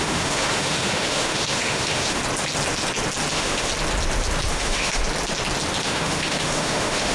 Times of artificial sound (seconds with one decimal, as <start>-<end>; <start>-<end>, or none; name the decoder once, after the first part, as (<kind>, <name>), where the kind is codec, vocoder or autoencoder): 0.0-2.2 (autoencoder, DAC-VAE); 3.3-3.7; 4.5-5.0; 5.8-7.1